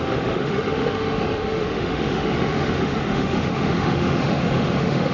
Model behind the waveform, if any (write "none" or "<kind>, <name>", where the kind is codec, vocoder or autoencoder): autoencoder, DAC-VAE